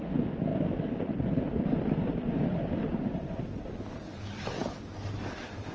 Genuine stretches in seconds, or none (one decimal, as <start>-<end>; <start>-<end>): 0.0-5.7